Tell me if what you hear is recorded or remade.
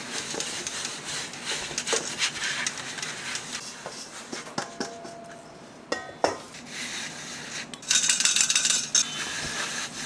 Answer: recorded